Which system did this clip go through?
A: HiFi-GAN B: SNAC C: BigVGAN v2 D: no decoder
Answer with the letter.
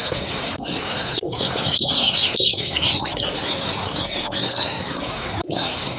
B